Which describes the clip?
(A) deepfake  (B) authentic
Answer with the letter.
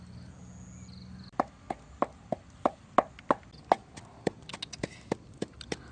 B